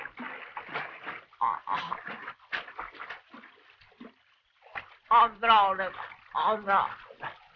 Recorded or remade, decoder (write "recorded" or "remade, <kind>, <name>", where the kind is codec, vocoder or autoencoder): recorded